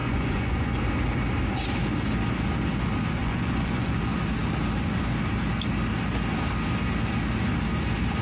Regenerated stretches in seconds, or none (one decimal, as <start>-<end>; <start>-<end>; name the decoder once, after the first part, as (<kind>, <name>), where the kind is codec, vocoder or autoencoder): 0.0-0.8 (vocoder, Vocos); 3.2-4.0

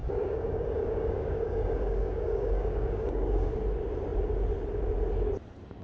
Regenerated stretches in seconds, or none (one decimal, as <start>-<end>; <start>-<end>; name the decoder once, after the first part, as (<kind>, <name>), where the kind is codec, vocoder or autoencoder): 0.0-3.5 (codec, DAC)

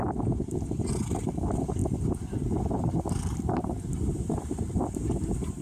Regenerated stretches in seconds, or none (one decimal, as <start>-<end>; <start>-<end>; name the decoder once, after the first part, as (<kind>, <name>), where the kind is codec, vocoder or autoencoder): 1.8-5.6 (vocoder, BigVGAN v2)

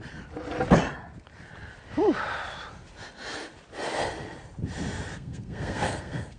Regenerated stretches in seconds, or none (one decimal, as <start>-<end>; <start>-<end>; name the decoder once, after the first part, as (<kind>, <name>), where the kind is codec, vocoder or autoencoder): 5.1-6.4 (codec, SNAC)